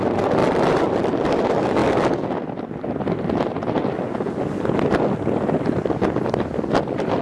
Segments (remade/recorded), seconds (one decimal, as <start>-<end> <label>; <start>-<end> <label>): 0.0-0.4 recorded; 0.4-1.4 remade; 1.4-7.2 recorded

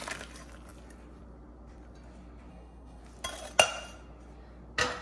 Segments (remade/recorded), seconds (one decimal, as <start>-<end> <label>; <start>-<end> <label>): 0.0-2.5 recorded; 2.5-3.0 remade; 3.0-5.0 recorded

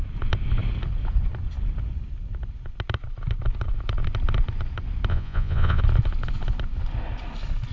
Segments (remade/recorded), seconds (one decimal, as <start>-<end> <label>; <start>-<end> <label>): 0.0-5.1 recorded; 5.1-5.8 remade; 5.8-7.7 recorded